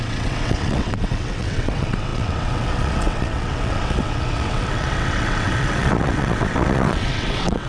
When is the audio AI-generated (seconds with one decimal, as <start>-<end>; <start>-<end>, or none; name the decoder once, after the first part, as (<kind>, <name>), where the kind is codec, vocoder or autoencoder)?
0.0-7.7 (vocoder, WaveNeXt)